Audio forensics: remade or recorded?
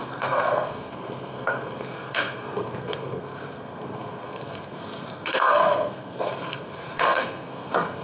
remade